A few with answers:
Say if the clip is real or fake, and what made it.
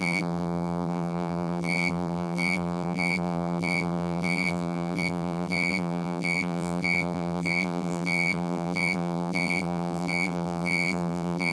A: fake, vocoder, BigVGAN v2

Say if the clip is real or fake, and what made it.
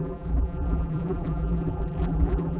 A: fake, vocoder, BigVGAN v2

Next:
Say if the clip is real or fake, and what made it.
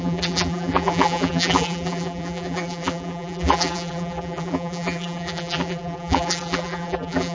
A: fake, vocoder, BigVGAN v2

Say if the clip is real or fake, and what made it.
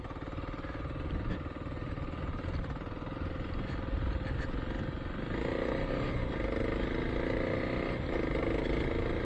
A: real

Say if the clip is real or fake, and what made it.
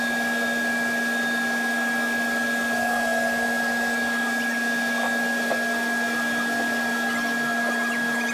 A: real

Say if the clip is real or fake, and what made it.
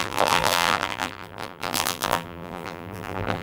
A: fake, vocoder, BigVGAN v2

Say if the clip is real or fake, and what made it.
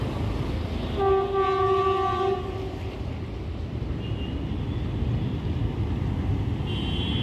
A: real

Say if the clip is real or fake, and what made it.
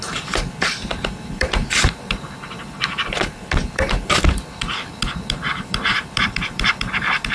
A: fake, vocoder, BigVGAN v2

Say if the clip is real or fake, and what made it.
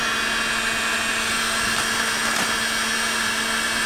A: real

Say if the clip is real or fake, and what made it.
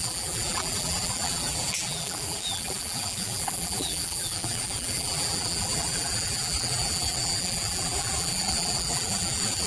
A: fake, vocoder, BigVGAN v2